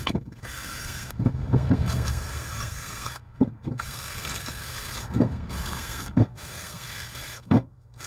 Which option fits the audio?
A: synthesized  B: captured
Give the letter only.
A